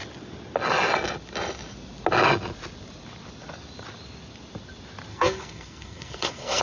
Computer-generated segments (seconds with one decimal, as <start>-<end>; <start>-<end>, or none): 5.1-6.6